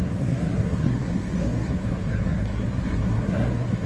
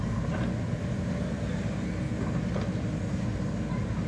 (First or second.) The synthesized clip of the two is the first